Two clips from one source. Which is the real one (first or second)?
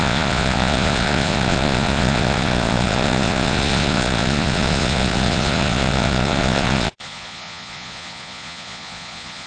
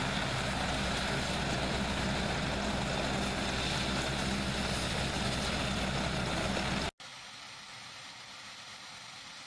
second